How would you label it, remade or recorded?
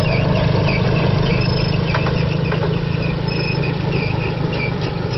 recorded